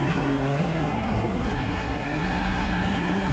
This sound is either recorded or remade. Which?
remade